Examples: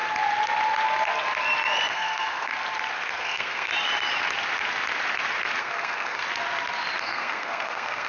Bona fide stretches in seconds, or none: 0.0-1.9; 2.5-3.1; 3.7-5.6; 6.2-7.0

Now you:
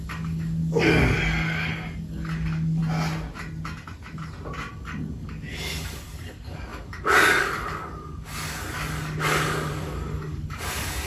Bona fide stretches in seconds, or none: 2.8-4.7

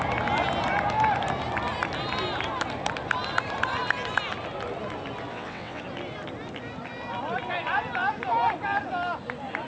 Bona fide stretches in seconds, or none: 0.0-5.3; 5.8-9.7

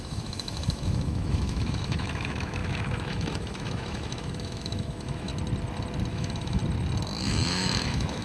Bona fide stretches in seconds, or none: 5.3-6.1; 6.6-7.2

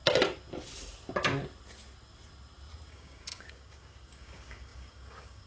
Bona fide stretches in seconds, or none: 0.0-2.9